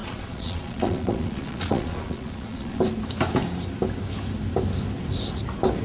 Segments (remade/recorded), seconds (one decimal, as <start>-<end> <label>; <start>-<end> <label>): 0.0-2.8 remade; 2.8-5.8 recorded